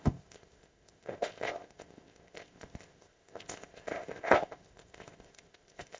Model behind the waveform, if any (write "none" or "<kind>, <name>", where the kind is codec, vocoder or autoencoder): codec, ZipCodec